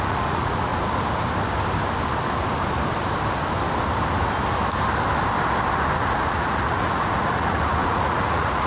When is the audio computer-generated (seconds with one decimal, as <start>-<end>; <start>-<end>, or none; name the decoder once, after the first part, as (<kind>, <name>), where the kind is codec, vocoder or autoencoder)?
0.0-0.7 (vocoder, Vocos); 5.9-8.7